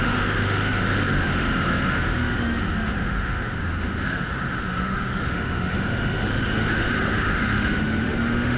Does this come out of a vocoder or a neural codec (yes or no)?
yes